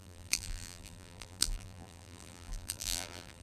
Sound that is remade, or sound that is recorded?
remade